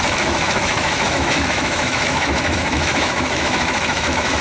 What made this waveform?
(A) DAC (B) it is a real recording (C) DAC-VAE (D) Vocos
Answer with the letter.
C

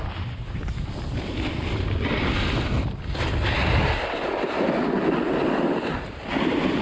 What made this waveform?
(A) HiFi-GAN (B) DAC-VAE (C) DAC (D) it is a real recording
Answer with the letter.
D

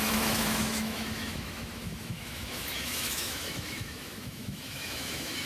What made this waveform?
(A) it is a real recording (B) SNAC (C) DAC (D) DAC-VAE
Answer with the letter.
D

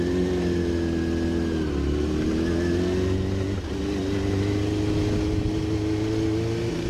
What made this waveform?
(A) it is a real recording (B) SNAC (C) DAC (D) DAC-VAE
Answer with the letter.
A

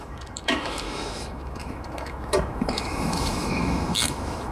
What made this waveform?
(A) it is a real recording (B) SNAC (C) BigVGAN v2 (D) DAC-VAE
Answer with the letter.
D